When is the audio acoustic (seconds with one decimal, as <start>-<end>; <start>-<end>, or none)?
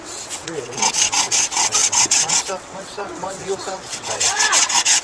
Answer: none